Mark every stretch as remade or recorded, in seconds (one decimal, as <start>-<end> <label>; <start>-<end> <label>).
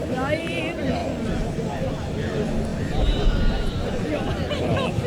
0.0-2.7 recorded; 2.7-3.9 remade; 3.9-5.1 recorded